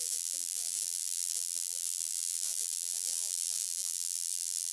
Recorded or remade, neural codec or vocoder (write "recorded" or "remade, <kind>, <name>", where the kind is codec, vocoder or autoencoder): remade, vocoder, BigVGAN v2